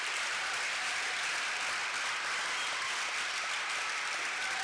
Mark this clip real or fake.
fake